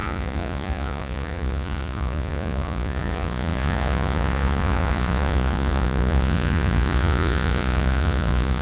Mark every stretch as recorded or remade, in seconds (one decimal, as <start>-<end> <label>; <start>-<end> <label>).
0.0-8.6 remade